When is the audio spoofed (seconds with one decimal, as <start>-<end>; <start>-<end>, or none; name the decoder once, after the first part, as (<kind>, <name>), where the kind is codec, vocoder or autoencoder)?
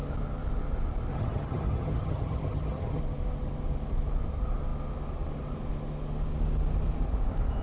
1.1-3.0 (vocoder, HiFi-GAN)